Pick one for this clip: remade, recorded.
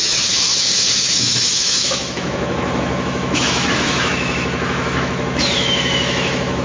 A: remade